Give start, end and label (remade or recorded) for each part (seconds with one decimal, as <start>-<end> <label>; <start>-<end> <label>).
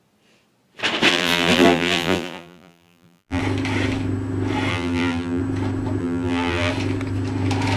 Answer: 0.0-1.1 recorded; 1.1-3.4 remade; 3.4-4.7 recorded; 4.7-5.4 remade; 5.4-6.0 recorded; 6.0-6.7 remade; 6.7-7.8 recorded